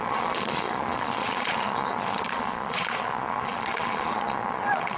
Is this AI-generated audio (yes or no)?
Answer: yes